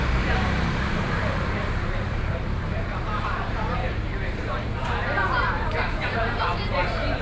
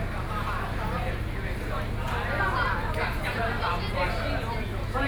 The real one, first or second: second